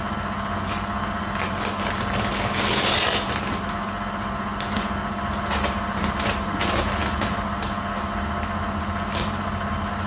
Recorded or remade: recorded